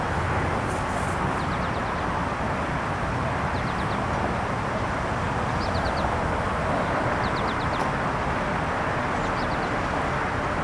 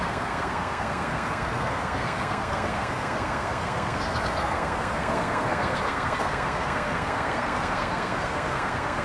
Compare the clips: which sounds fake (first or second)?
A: second